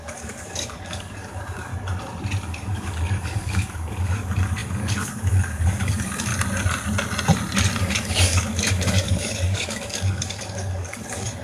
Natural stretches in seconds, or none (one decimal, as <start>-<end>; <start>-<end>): 1.7-2.5; 6.3-7.8